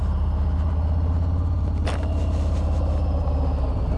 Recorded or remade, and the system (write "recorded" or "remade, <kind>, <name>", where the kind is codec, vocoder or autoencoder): recorded